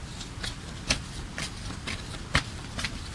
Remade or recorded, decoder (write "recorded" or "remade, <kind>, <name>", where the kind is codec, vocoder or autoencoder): recorded